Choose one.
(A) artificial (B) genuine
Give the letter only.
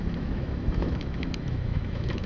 A